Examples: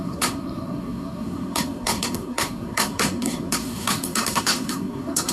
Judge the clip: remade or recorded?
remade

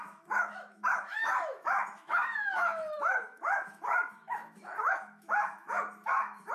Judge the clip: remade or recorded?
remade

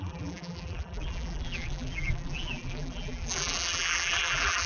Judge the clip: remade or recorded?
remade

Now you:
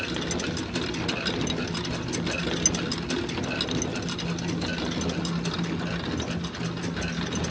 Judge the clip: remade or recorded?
recorded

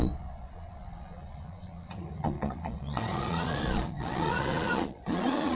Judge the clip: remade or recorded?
remade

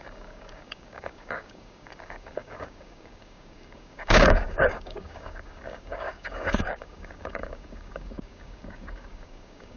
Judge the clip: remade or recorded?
remade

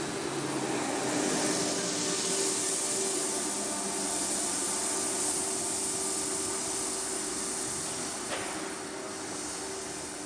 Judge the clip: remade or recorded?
recorded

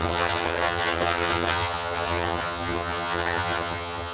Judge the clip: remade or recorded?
remade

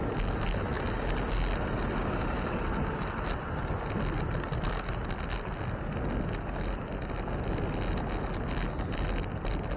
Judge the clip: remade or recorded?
recorded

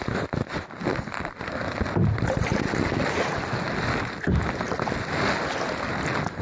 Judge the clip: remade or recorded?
recorded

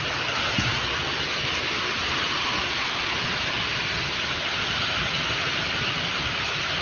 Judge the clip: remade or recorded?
recorded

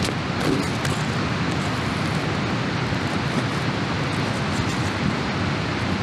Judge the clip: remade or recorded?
recorded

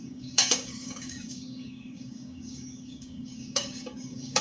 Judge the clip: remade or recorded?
remade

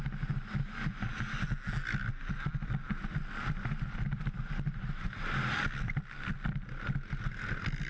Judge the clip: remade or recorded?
recorded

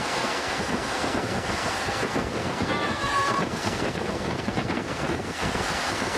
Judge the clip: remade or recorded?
remade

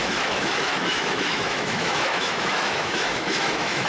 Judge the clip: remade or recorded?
remade